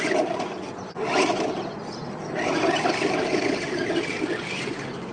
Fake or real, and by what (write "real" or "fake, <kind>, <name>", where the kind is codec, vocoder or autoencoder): real